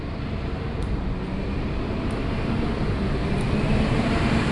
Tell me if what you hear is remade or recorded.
recorded